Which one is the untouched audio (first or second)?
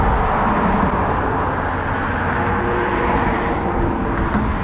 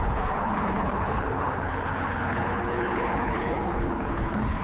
first